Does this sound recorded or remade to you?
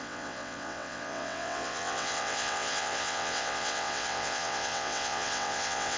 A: remade